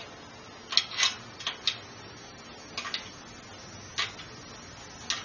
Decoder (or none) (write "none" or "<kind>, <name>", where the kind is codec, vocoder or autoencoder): none